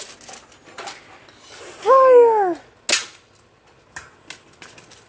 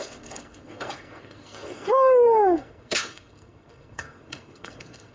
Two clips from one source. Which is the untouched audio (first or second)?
first